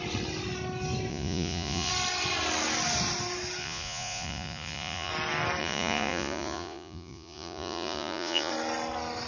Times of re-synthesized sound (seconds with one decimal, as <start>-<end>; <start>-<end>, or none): 1.1-1.9; 3.6-5.1; 5.6-8.5

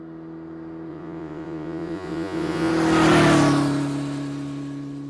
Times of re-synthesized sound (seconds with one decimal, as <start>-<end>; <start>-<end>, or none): 0.9-2.7

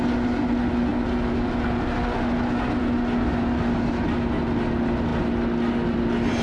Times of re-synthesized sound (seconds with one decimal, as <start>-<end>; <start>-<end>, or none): none

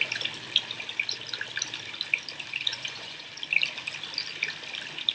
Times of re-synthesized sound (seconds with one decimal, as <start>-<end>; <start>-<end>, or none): 2.7-3.3

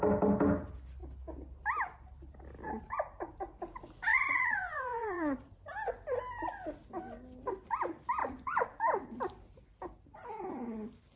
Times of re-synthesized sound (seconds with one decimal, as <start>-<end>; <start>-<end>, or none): 4.1-5.5; 8.2-8.8

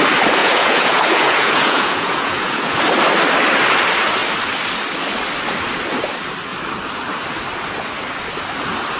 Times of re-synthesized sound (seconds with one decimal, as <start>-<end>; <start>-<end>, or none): 0.4-2.8

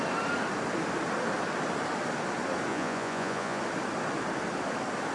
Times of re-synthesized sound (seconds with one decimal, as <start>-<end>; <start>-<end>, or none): 2.7-3.6